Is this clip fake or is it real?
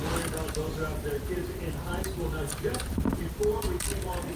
real